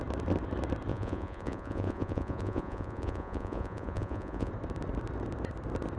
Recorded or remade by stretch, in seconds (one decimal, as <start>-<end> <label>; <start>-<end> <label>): 0.0-0.9 recorded; 0.9-4.5 remade; 4.5-6.0 recorded

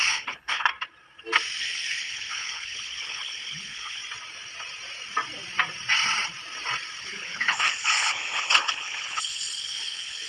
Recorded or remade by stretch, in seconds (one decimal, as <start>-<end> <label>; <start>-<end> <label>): 0.0-0.7 remade; 0.7-1.6 recorded; 1.6-4.0 remade; 4.0-7.0 recorded; 7.0-10.3 remade

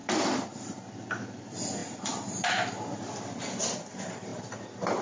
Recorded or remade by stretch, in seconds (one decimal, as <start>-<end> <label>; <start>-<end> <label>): 0.0-5.0 recorded

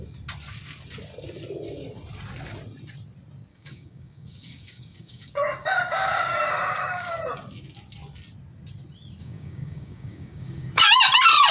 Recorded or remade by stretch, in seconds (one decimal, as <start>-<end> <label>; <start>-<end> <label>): 0.0-3.5 recorded; 3.5-7.1 remade; 7.1-9.2 recorded; 9.2-10.8 remade; 10.8-11.5 recorded